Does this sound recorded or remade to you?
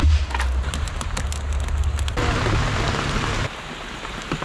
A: recorded